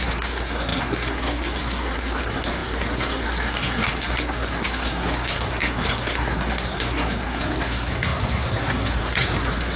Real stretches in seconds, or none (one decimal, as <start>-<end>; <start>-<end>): none